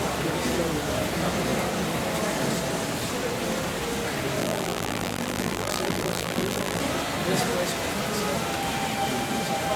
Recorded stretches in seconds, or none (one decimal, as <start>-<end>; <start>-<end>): 0.0-4.4; 6.8-9.8